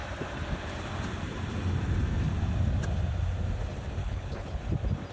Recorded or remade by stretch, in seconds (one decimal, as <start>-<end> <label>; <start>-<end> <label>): 0.0-4.0 recorded; 4.0-4.6 remade; 4.6-5.1 recorded

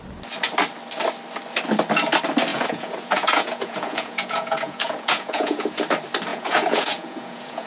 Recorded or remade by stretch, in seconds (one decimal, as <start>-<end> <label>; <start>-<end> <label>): 0.0-2.5 recorded; 2.5-5.8 remade; 5.8-6.3 recorded; 6.3-7.7 remade

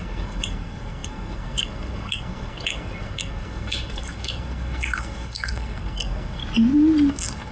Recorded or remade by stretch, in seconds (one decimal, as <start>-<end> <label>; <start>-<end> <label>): 0.0-6.4 remade; 6.4-7.1 recorded; 7.1-7.5 remade

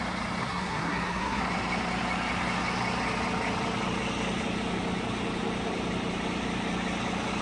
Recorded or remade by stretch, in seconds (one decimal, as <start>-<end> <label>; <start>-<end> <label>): 0.0-0.4 recorded; 0.4-1.4 remade; 1.4-7.4 recorded

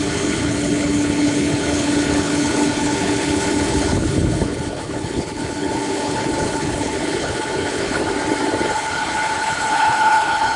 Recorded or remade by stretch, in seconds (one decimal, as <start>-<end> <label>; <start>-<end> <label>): 0.0-8.0 remade; 8.0-8.6 recorded; 8.6-10.6 remade